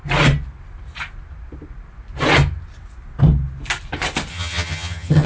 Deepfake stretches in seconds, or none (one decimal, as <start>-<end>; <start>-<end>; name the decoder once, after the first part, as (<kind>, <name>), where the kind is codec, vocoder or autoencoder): 4.3-5.3 (vocoder, HiFi-GAN)